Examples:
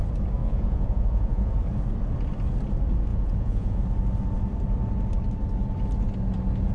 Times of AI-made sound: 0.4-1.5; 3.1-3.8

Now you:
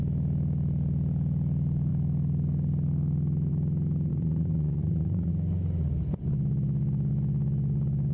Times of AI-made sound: 4.1-5.3

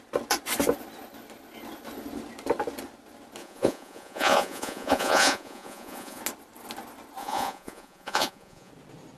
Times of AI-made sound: 3.4-6.2; 7.2-8.7

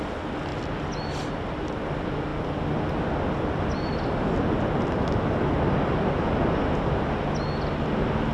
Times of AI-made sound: none